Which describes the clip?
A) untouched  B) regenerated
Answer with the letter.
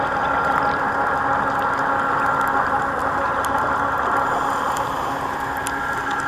A